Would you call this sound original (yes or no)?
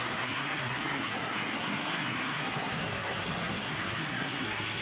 no